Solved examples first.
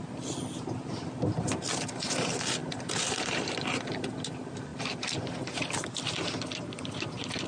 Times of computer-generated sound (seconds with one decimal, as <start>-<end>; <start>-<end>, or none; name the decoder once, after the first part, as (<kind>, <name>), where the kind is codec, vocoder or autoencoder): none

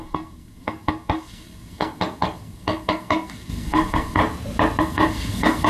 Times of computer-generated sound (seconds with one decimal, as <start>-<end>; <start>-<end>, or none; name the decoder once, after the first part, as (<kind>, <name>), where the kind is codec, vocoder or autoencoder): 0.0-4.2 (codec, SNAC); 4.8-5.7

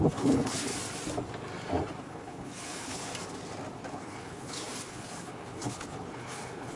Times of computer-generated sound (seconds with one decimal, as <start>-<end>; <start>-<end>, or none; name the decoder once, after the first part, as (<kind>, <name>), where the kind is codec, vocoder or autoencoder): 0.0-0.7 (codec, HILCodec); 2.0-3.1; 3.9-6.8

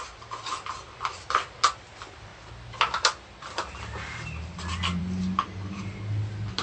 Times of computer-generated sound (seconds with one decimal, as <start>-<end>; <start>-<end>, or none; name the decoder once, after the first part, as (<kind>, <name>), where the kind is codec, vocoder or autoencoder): none